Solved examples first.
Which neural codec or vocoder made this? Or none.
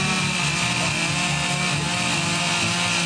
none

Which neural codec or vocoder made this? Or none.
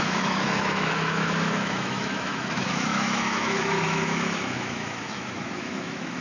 autoencoder, DAC-VAE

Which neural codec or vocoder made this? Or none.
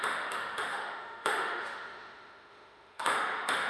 autoencoder, DAC-VAE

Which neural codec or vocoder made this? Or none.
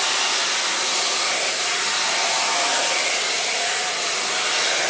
none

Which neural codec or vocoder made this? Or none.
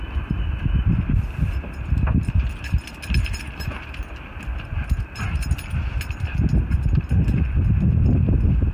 none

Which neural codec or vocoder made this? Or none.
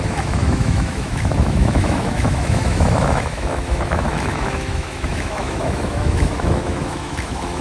autoencoder, DAC-VAE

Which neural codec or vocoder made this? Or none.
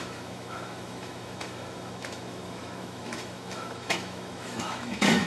autoencoder, DAC-VAE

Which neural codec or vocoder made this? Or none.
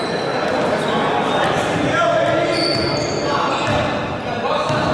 none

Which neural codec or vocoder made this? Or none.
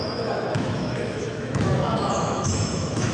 autoencoder, DAC-VAE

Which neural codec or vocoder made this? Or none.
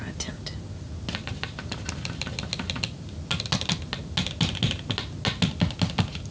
none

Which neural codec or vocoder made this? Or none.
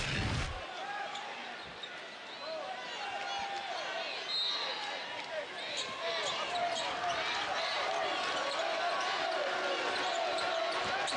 none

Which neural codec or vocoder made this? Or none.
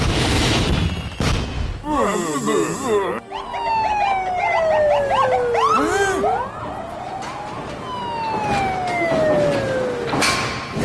none